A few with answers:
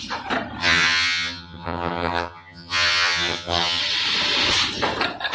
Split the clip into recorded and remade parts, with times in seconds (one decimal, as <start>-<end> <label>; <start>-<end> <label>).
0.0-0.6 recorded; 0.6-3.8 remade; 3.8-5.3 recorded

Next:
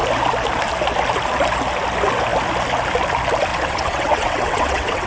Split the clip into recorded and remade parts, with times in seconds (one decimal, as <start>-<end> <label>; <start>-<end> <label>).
0.0-3.5 recorded; 3.5-5.1 remade

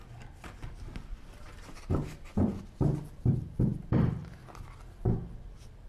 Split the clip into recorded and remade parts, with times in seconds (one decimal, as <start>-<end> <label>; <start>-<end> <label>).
0.0-4.2 remade; 4.2-5.1 recorded; 5.1-5.9 remade